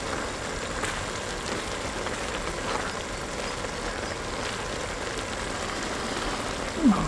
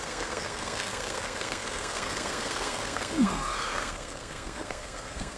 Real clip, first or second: first